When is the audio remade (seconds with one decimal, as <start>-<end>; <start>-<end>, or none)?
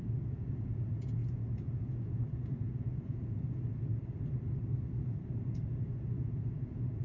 0.0-3.9; 5.7-7.0